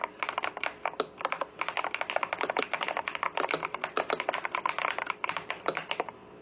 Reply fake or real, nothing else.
real